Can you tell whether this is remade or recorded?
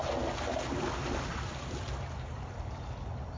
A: recorded